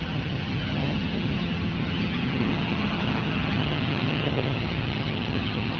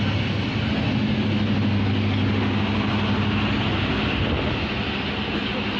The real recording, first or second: second